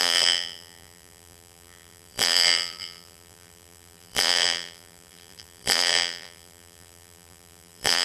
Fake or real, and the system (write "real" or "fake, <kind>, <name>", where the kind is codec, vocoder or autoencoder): fake, vocoder, BigVGAN v2